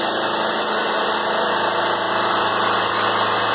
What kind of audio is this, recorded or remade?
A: recorded